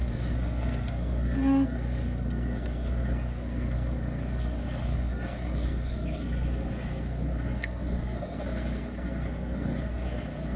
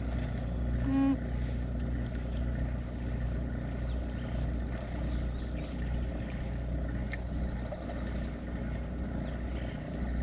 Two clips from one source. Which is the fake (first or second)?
first